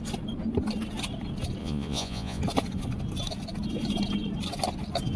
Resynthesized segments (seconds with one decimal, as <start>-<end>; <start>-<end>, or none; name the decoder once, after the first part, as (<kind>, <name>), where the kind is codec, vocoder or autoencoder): 1.6-2.4 (vocoder, Vocos)